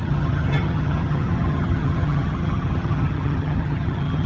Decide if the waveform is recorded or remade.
remade